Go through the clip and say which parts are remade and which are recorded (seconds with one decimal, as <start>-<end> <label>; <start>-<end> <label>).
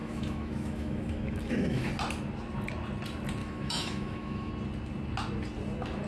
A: 0.0-1.9 remade; 1.9-3.4 recorded; 3.4-4.5 remade; 4.5-6.1 recorded